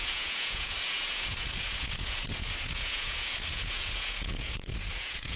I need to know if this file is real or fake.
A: fake